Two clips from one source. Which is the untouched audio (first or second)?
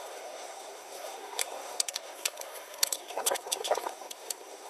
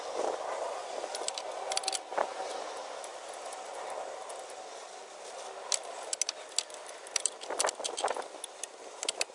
second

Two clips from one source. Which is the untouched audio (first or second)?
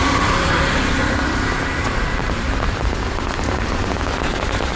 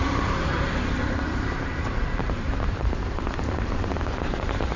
first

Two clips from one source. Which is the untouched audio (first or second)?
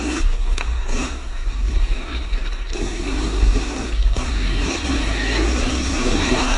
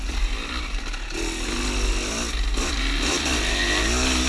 second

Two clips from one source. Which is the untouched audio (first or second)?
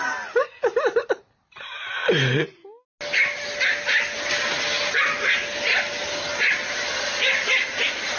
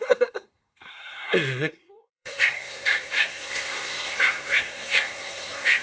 first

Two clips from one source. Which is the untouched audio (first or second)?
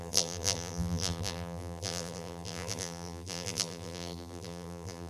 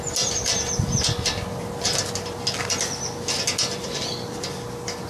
second